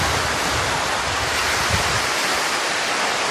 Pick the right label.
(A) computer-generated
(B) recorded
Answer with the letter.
B